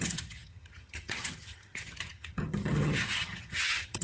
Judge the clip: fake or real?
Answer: fake